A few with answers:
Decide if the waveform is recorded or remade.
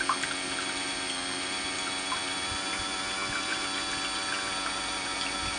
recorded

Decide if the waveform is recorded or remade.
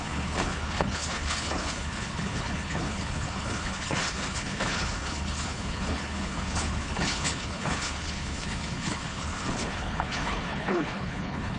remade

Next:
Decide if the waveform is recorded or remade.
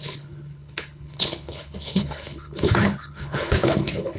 remade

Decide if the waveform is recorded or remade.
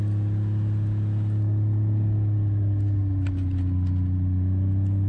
recorded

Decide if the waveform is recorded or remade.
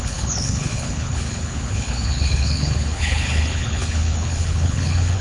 remade